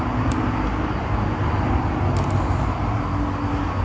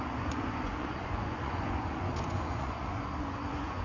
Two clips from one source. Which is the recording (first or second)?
first